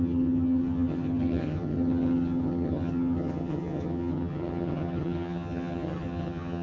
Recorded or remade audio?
remade